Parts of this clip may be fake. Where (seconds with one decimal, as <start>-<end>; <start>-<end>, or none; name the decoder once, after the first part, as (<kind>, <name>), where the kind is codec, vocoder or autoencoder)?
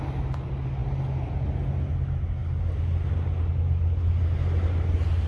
none